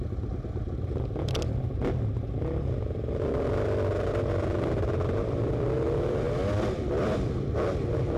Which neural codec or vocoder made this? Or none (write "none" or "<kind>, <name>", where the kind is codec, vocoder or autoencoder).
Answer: none